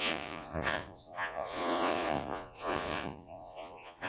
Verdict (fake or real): fake